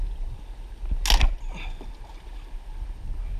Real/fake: real